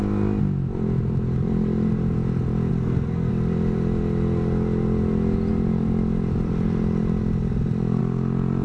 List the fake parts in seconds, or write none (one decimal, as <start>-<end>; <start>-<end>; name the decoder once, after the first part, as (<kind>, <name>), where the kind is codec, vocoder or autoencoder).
2.7-3.3 (codec, SNAC)